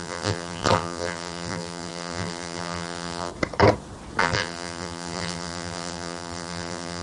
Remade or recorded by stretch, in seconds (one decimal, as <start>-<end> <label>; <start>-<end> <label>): 0.0-3.3 remade; 3.3-4.2 recorded; 4.2-7.0 remade